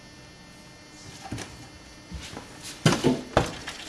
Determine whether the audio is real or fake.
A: real